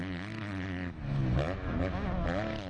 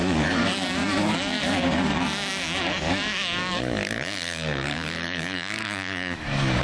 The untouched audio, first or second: first